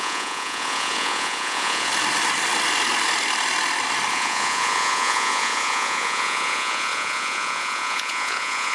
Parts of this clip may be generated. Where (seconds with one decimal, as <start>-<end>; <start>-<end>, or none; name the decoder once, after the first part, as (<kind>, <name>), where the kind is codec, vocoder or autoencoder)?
0.0-1.9 (vocoder, Vocos); 4.1-8.7